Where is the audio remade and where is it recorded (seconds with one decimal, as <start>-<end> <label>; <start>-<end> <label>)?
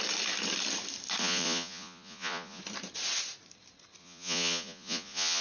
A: 0.0-1.2 recorded; 1.2-2.6 remade; 2.6-4.0 recorded; 4.0-5.4 remade